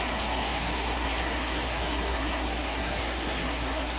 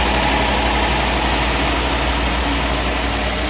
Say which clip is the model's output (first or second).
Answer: first